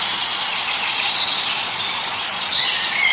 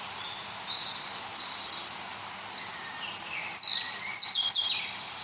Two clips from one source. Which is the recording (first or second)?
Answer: second